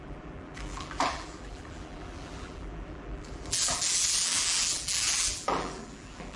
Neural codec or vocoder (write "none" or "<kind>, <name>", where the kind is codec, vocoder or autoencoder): vocoder, BigVGAN v2